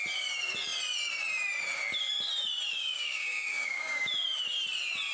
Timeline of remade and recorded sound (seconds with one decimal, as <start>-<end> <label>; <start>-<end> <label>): 0.0-2.7 recorded; 2.7-4.1 remade; 4.1-5.1 recorded

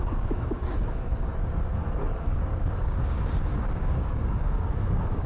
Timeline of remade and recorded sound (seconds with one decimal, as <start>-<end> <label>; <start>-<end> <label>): 0.0-1.3 remade; 1.3-2.2 recorded; 2.2-5.3 remade

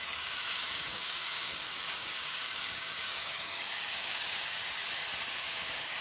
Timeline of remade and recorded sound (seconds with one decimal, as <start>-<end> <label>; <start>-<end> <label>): 0.0-4.8 remade; 4.8-5.3 recorded; 5.3-6.0 remade

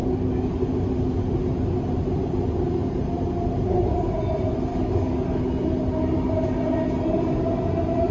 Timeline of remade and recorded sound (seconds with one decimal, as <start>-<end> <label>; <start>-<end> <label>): 0.0-4.7 recorded; 4.7-5.4 remade; 5.4-8.1 recorded

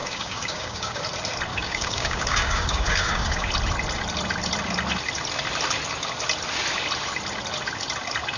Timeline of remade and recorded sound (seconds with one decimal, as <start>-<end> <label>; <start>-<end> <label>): 0.0-1.0 remade; 1.0-1.5 recorded; 1.5-3.5 remade; 3.5-8.4 recorded

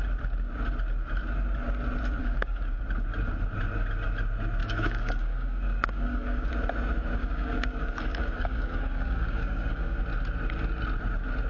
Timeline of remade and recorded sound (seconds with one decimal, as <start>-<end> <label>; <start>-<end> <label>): 0.0-2.2 recorded; 2.2-2.8 remade; 2.8-4.6 recorded; 4.6-6.5 remade; 6.5-7.2 recorded; 7.2-10.0 remade; 10.0-11.5 recorded

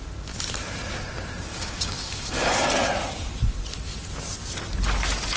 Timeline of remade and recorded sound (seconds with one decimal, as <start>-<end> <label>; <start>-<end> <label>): 0.0-1.5 recorded; 1.5-2.5 remade; 2.5-5.4 recorded